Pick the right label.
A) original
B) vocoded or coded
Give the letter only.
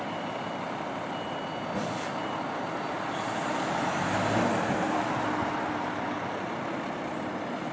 A